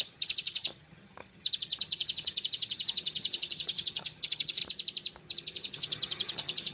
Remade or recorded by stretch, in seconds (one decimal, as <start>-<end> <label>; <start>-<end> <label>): 0.0-4.6 remade; 4.6-5.2 recorded; 5.2-6.7 remade